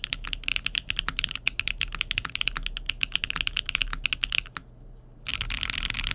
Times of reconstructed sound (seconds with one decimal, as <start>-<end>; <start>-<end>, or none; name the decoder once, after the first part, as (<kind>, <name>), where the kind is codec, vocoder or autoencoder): none